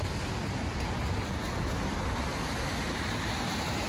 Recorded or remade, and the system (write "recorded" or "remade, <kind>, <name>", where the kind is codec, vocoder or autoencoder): recorded